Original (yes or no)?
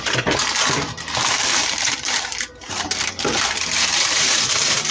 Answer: no